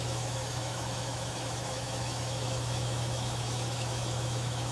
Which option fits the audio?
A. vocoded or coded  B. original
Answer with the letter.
A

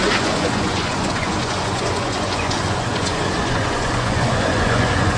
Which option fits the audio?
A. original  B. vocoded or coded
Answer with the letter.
B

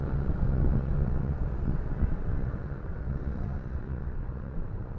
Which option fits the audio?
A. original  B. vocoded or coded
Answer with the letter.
B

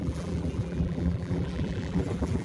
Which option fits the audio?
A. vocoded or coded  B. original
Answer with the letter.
A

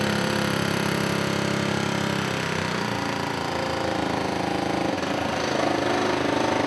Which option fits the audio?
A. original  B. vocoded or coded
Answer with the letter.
B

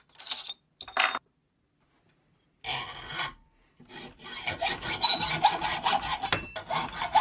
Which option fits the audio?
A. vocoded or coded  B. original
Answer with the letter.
B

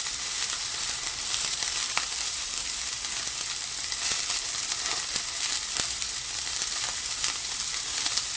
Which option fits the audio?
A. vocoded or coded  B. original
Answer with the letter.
A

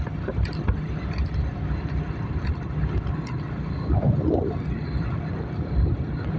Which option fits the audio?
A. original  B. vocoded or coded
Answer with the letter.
A